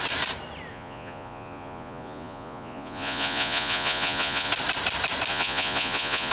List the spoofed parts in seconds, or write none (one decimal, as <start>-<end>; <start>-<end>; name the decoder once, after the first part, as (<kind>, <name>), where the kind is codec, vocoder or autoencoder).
0.7-4.5 (vocoder, Vocos); 5.3-6.3